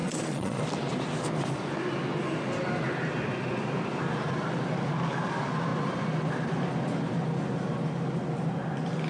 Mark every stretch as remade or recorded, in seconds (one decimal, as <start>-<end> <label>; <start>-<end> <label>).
0.0-0.6 remade; 0.6-9.1 recorded